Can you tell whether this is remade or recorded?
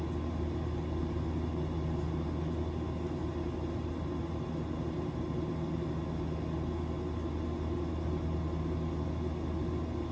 recorded